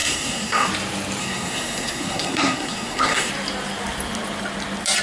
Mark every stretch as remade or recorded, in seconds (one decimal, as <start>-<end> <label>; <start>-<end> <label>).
0.0-0.7 remade; 0.7-1.2 recorded; 1.2-3.3 remade; 3.3-5.0 recorded